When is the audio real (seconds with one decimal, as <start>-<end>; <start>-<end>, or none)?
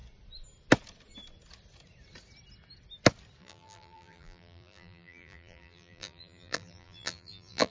0.0-3.4